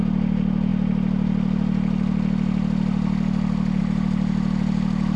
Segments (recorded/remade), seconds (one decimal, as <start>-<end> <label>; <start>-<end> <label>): 0.0-5.2 recorded